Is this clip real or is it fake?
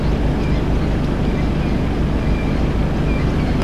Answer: real